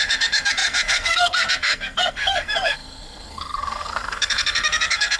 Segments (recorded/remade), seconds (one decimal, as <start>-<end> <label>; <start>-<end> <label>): 0.0-5.2 remade